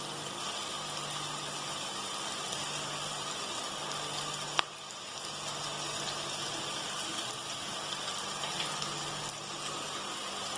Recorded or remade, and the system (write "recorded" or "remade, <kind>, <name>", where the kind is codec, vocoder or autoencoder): recorded